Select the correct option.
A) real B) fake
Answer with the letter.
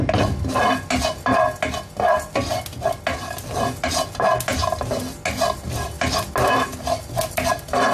A